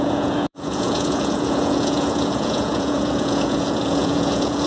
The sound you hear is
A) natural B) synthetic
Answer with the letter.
B